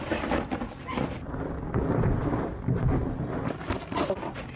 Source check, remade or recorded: recorded